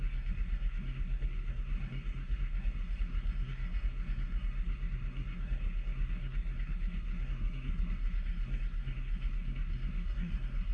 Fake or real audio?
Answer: fake